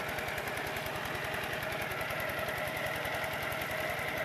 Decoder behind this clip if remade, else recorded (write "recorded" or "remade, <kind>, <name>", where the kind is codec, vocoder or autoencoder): recorded